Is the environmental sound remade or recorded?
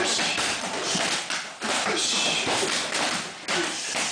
recorded